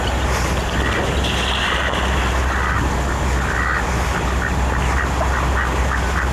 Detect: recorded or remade recorded